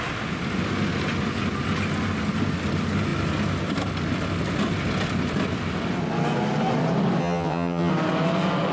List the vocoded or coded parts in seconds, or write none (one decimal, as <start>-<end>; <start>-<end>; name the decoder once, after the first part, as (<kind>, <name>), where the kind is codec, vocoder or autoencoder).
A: 7.2-7.9 (vocoder, HiFi-GAN)